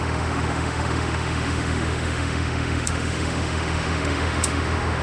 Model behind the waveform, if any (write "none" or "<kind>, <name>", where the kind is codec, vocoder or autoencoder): autoencoder, DAC-VAE